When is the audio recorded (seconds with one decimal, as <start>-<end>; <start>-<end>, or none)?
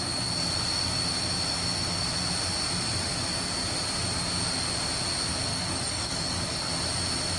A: 0.0-5.5; 6.7-7.4